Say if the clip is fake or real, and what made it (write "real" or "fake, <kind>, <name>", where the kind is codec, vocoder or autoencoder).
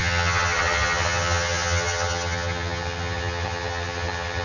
fake, vocoder, HiFi-GAN